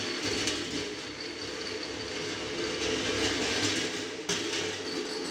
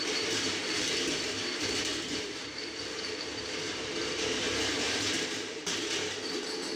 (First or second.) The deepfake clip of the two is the second